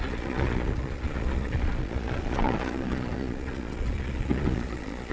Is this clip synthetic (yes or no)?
yes